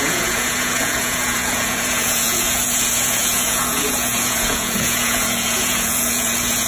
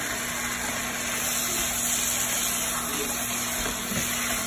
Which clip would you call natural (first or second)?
second